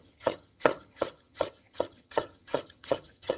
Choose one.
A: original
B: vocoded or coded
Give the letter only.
B